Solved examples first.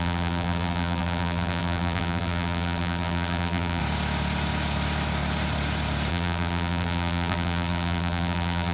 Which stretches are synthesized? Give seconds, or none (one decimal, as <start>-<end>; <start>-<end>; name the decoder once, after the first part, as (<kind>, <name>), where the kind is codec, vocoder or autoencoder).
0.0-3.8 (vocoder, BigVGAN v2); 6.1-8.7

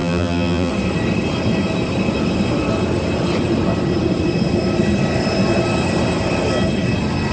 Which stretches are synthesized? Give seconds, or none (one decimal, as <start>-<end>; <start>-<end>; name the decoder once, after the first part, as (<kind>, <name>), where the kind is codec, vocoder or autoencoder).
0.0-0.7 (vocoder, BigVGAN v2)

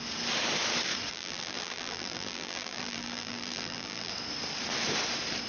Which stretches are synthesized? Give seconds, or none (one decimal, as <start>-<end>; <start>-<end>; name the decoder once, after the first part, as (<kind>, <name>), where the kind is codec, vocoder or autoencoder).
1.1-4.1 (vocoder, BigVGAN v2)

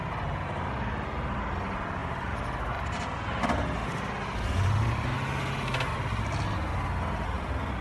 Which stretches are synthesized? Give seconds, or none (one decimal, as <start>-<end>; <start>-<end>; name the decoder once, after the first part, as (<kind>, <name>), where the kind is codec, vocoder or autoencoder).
none

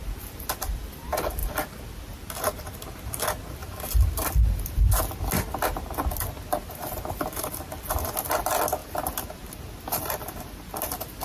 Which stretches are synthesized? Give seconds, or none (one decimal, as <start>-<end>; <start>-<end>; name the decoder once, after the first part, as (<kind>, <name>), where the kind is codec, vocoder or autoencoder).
3.6-5.0 (vocoder, BigVGAN v2); 6.6-7.5

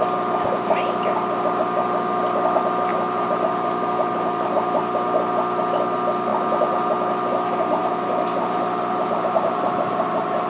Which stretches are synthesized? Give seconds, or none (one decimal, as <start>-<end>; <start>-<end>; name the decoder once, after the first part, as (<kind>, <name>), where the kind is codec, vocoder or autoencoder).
2.9-4.8 (vocoder, BigVGAN v2); 6.3-6.9; 7.8-10.5

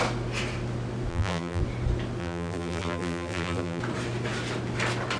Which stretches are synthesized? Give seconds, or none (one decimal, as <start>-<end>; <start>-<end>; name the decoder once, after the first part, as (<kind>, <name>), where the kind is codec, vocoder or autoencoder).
1.1-1.6 (vocoder, BigVGAN v2); 2.2-3.8